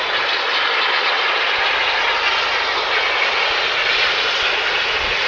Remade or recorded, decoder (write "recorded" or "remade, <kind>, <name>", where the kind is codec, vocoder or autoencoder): recorded